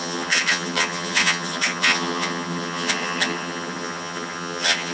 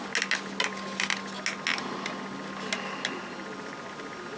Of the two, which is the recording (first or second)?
second